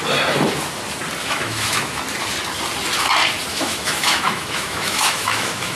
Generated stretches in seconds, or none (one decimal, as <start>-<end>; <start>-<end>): 1.2-2.0; 3.5-5.8